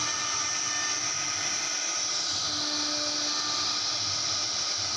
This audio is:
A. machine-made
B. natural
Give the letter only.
B